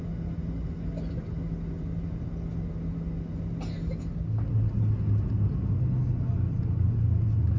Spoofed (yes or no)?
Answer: no